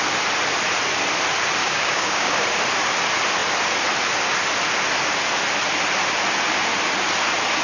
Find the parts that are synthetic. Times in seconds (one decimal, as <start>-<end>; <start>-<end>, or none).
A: 1.6-2.3